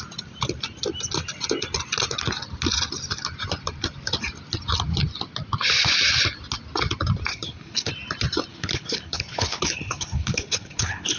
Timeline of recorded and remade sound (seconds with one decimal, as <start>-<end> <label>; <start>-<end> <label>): 0.0-7.3 recorded; 7.3-7.9 remade; 7.9-8.5 recorded; 8.5-11.2 remade